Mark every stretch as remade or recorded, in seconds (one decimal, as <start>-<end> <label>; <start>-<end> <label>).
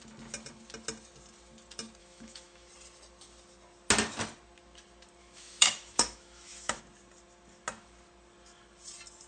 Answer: 0.0-2.0 recorded; 2.0-2.7 remade; 2.7-5.2 recorded; 5.2-6.8 remade; 6.8-9.3 recorded